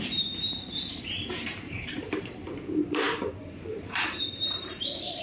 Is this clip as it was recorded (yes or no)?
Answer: no